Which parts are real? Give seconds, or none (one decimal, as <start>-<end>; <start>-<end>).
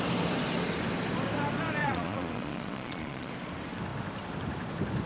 0.0-1.8; 3.3-5.1